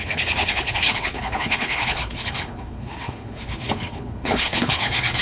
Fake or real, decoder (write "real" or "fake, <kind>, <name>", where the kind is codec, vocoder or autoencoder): fake, codec, HILCodec